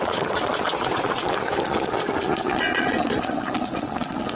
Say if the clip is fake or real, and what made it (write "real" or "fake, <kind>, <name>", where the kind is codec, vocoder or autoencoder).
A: fake, vocoder, Vocos